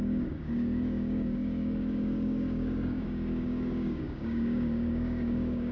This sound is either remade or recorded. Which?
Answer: remade